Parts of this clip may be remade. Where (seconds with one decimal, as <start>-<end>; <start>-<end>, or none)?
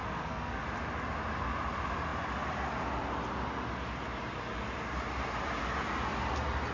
0.0-0.6